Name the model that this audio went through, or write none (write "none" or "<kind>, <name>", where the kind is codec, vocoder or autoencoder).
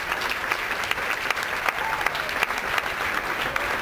none